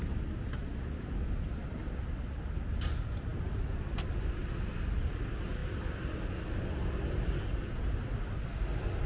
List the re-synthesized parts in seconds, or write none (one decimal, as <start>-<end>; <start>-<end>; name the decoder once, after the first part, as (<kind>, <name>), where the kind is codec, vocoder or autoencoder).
none